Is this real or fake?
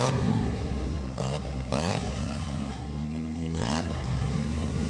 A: fake